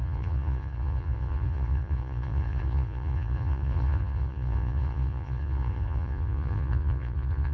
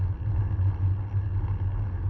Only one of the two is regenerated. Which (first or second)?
first